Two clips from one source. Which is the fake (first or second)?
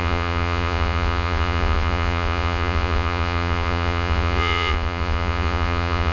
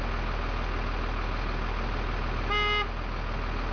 first